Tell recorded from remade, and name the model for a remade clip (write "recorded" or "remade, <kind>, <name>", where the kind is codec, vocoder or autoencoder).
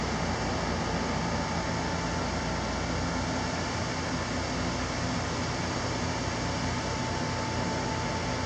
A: recorded